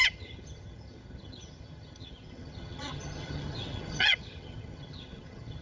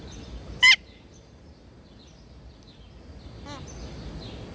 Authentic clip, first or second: second